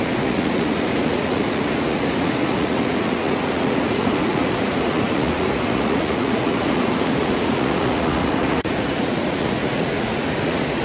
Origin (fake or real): fake